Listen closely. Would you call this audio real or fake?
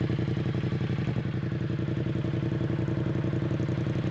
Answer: real